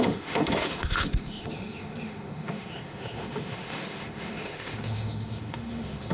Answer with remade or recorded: remade